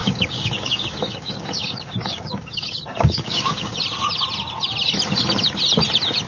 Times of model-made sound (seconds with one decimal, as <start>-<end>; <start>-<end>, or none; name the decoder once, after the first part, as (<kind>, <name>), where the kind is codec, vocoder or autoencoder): 0.0-3.8 (codec, DAC)